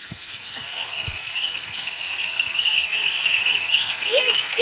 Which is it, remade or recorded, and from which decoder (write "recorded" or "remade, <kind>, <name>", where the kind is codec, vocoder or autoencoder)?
remade, codec, SNAC